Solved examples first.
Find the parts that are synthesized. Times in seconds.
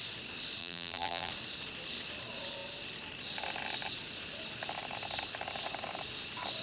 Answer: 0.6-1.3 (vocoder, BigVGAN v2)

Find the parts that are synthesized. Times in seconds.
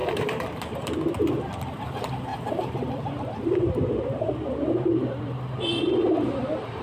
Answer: 0.0-0.6 (vocoder, BigVGAN v2); 2.3-5.3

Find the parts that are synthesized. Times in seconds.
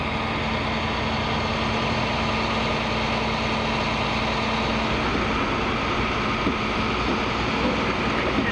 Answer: 5.1-6.9 (vocoder, BigVGAN v2)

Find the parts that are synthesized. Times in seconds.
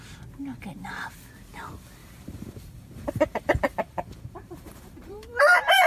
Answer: 2.0-5.5 (vocoder, BigVGAN v2)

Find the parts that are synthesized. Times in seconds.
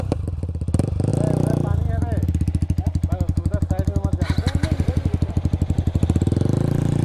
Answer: none